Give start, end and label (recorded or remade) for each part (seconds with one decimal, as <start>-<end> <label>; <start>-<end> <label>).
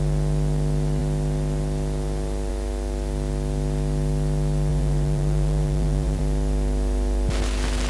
0.0-4.7 recorded; 4.7-6.2 remade; 6.2-7.9 recorded